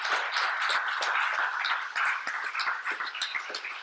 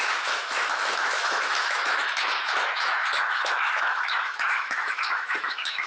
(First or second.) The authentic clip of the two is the first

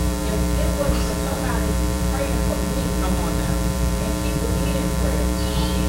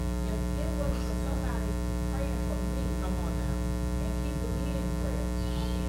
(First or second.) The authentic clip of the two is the second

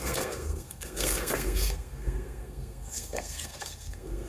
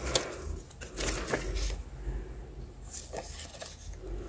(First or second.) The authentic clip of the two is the second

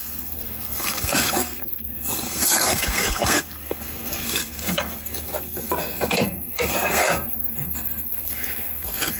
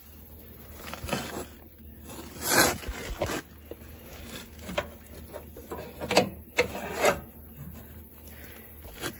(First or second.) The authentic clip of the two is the second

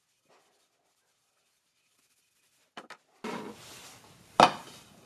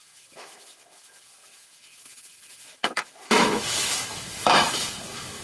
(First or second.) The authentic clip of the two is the first